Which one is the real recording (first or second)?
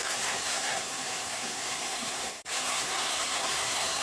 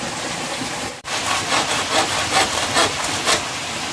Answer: second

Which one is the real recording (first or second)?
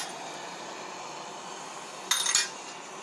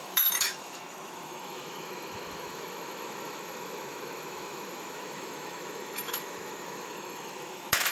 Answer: first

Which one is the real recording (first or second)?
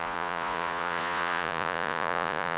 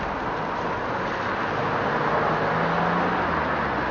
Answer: second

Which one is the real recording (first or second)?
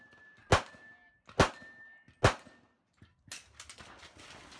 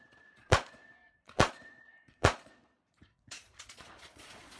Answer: first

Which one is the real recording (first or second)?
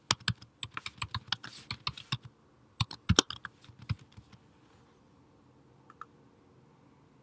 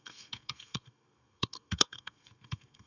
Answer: first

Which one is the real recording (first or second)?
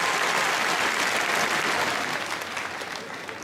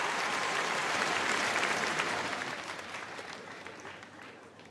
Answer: first